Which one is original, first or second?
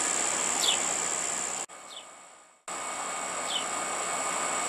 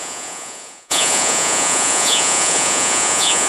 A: first